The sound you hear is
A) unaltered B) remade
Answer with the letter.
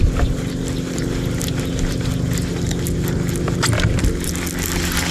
A